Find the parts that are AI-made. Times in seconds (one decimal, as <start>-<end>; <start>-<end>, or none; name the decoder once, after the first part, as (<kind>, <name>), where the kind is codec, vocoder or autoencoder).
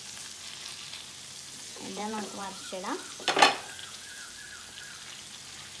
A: 1.7-2.6 (vocoder, Vocos); 3.8-4.3